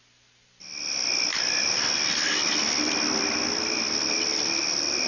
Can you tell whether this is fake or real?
real